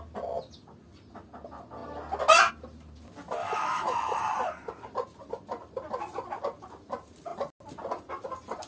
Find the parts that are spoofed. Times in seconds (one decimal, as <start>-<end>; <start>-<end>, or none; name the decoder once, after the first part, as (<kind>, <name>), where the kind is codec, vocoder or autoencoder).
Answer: 3.4-4.2 (autoencoder, DAC-VAE)